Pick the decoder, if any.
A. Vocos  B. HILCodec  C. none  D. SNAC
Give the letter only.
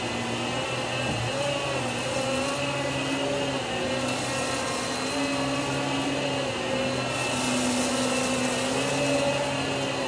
C